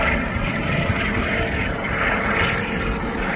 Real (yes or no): yes